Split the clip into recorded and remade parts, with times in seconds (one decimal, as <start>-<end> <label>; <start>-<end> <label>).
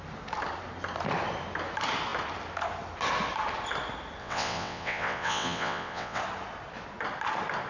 0.0-4.2 recorded; 4.2-6.2 remade; 6.2-7.7 recorded